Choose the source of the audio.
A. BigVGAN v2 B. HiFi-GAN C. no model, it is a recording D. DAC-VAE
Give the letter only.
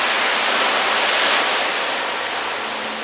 C